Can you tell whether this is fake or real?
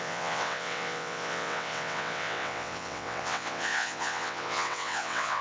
fake